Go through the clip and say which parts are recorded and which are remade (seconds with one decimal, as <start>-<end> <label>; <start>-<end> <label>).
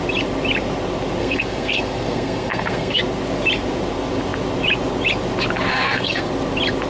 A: 0.0-1.2 recorded; 1.2-3.0 remade; 3.0-5.7 recorded; 5.7-6.3 remade; 6.3-6.9 recorded